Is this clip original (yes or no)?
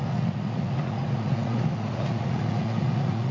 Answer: no